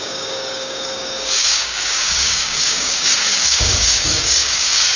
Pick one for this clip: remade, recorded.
remade